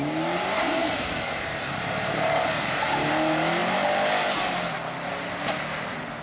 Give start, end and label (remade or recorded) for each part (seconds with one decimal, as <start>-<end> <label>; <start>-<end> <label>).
0.0-0.8 recorded; 0.8-2.5 remade; 2.5-6.2 recorded